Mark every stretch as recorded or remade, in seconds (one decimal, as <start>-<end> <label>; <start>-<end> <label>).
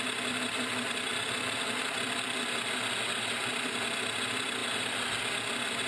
0.0-5.9 recorded